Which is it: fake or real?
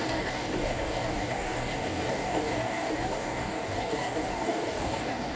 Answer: fake